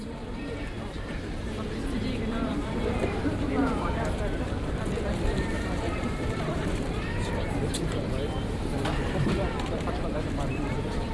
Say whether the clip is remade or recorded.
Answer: remade